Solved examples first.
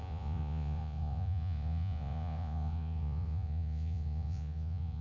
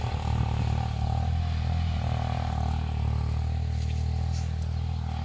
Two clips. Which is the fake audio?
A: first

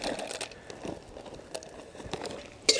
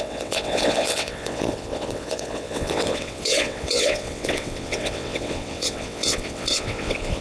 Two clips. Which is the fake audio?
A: second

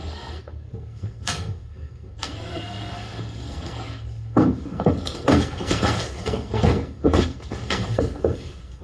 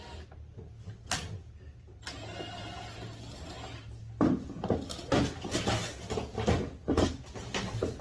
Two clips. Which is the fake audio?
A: first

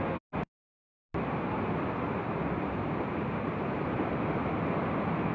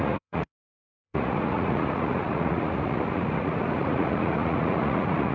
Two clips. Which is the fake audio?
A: second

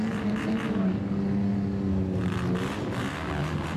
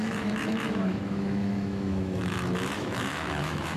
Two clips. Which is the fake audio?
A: second